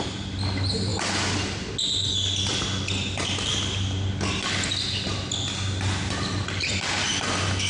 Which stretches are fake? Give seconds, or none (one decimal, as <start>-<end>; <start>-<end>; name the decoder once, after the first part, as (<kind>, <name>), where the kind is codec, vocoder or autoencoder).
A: none